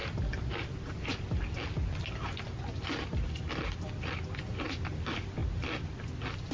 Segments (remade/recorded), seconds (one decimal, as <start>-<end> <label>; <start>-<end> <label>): 0.0-6.5 recorded